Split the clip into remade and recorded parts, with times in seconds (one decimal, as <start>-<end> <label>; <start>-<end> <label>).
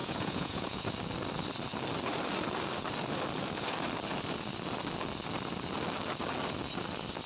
0.0-0.9 remade; 0.9-7.3 recorded